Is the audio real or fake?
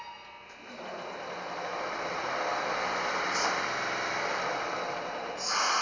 real